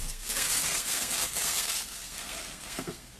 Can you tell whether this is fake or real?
fake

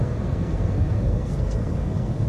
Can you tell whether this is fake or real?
fake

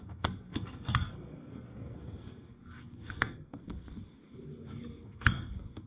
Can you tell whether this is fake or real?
fake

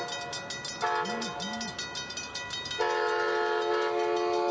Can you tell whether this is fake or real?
real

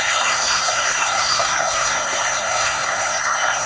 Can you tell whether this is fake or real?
fake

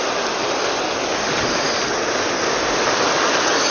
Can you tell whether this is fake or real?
real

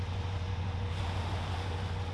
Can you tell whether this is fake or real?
real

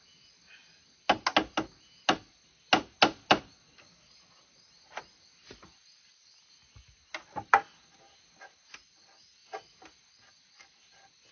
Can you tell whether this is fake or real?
real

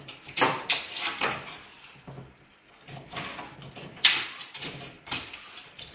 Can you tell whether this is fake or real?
fake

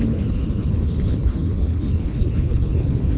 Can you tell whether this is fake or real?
fake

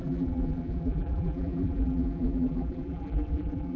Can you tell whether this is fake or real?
fake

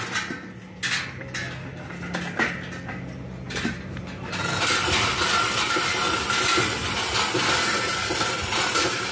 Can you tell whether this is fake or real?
real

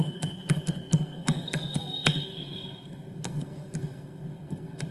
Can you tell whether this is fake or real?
fake